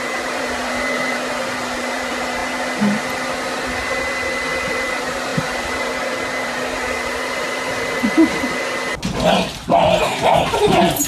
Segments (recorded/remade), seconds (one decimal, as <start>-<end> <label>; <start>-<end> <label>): 0.0-2.4 remade; 2.4-4.7 recorded; 4.7-8.0 remade; 8.0-9.8 recorded; 9.8-11.1 remade